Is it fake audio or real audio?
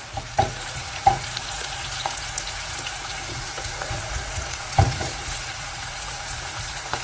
fake